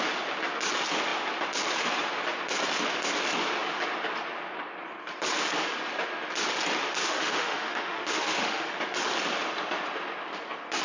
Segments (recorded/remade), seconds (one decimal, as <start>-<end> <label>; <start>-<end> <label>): 0.0-7.0 recorded; 7.0-8.7 remade; 8.7-10.8 recorded